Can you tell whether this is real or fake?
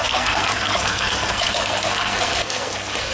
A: fake